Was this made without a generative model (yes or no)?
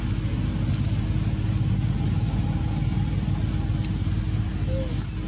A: yes